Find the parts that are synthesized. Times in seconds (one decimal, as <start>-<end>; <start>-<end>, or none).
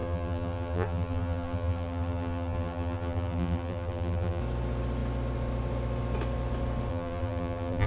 0.0-4.4; 6.9-7.9